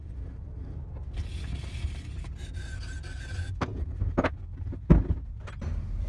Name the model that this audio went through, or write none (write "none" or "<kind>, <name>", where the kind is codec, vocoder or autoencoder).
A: none